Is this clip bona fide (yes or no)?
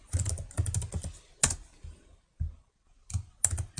yes